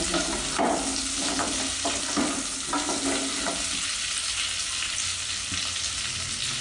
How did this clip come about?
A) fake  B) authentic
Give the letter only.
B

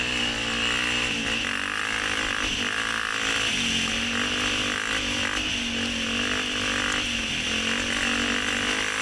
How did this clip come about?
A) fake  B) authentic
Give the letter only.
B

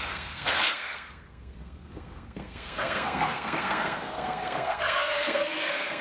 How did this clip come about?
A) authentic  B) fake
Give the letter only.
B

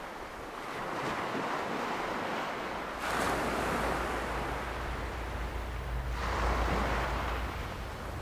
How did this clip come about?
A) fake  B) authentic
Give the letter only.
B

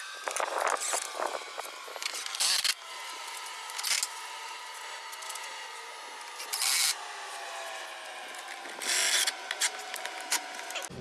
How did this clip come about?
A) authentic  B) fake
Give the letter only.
A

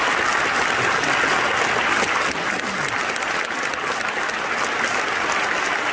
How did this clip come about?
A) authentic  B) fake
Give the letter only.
A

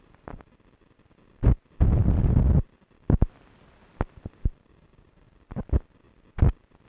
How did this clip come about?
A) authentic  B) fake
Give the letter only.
A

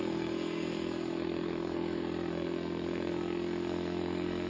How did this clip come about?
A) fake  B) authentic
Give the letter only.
A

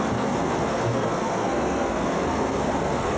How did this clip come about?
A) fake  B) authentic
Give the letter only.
A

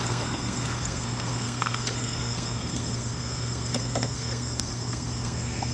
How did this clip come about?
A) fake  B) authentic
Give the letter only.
A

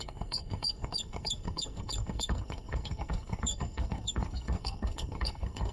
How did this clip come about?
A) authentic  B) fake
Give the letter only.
B